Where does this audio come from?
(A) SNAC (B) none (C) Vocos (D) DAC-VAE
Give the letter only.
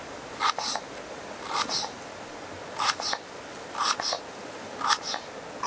B